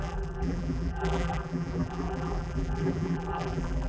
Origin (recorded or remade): remade